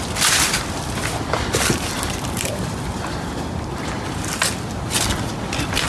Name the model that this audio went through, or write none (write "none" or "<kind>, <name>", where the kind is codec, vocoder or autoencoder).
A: vocoder, BigVGAN v2